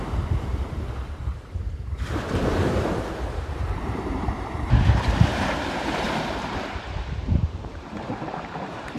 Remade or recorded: remade